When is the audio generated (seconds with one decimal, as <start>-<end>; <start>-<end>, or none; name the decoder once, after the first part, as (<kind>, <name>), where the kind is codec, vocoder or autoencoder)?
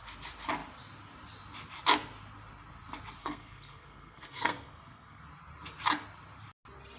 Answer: 3.2-5.2 (codec, SNAC)